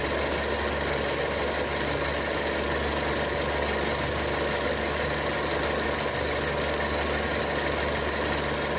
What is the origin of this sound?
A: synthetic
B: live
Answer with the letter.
B